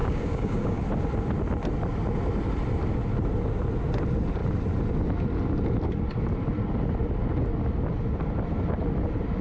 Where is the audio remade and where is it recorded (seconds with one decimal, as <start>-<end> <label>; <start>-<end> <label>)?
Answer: 0.0-0.8 remade; 0.8-9.4 recorded